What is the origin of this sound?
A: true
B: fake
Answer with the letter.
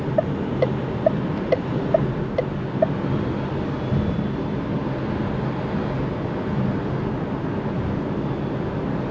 A